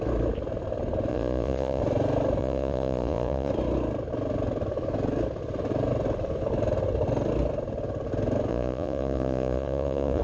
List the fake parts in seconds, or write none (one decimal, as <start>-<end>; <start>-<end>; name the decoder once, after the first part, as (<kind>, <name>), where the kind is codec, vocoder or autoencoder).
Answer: 1.1-1.8 (vocoder, Vocos); 2.4-3.5; 8.5-10.2

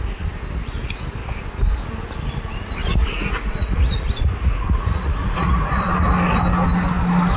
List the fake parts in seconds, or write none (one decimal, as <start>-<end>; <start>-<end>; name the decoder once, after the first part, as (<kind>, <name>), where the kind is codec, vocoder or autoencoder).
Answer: 2.8-5.9 (vocoder, Vocos)

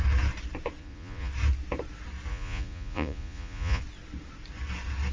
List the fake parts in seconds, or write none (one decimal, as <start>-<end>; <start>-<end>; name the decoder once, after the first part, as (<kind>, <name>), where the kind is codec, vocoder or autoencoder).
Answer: 0.8-1.3 (vocoder, Vocos); 2.3-3.8

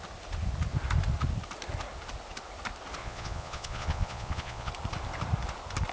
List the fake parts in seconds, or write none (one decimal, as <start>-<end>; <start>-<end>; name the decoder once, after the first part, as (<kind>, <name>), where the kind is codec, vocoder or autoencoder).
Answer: 3.0-4.7 (vocoder, Vocos)

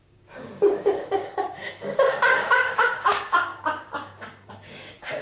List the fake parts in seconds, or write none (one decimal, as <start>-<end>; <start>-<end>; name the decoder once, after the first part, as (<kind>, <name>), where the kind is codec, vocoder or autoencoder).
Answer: 0.0-5.2 (codec, DAC)

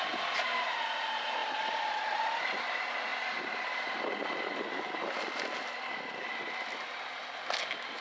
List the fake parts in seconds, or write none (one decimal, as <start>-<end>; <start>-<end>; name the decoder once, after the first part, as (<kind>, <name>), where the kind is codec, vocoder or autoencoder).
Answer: 1.4-2.0 (vocoder, BigVGAN v2); 3.1-6.9

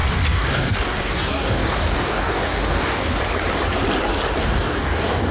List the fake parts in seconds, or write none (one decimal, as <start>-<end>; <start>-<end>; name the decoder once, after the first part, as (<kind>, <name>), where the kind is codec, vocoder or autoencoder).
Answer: 0.0-3.2 (codec, DAC); 4.4-5.3

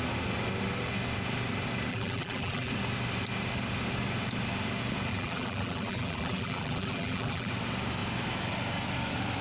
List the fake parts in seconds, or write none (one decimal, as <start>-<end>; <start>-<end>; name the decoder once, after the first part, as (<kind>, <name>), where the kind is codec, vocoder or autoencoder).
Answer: 1.9-2.7 (vocoder, BigVGAN v2); 5.1-7.5